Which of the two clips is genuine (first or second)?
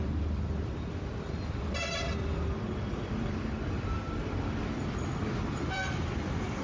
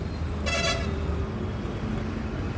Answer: second